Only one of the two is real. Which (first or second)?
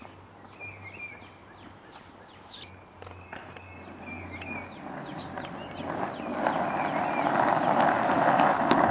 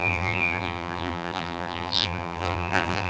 first